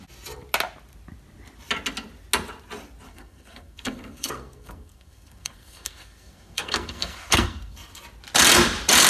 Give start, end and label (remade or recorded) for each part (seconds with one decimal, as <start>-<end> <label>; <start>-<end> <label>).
0.0-3.1 recorded; 3.1-8.0 remade; 8.0-9.1 recorded

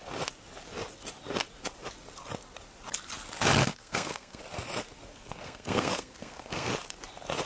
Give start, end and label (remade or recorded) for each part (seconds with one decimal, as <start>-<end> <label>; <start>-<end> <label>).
0.0-3.6 recorded; 3.6-4.4 remade; 4.4-5.1 recorded; 5.1-6.7 remade; 6.7-7.5 recorded